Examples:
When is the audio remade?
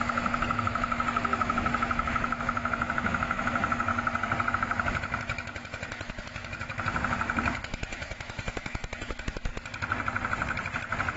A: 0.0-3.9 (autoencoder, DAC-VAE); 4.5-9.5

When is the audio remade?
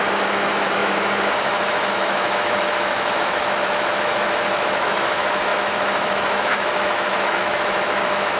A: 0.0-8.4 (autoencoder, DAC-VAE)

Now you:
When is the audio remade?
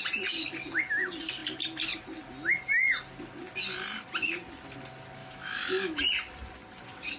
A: 5.2-6.0 (autoencoder, DAC-VAE)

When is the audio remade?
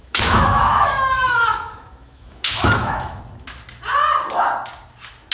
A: 0.0-3.2 (autoencoder, DAC-VAE)